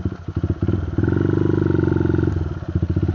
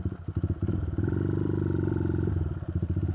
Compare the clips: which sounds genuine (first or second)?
first